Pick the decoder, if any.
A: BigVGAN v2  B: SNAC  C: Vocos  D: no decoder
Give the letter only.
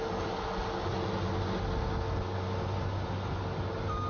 D